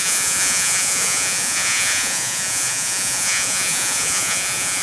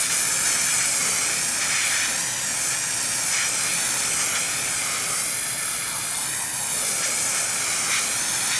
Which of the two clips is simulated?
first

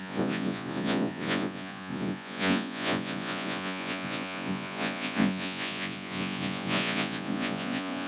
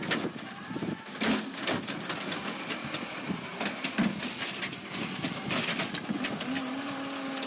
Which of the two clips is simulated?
first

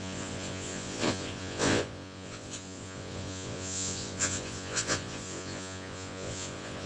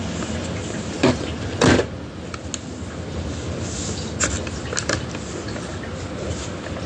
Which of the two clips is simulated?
first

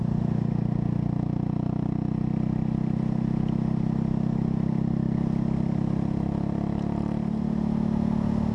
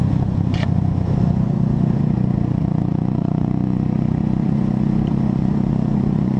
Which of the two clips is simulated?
second